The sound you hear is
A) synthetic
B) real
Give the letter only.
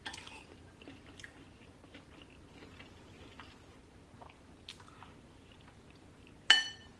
B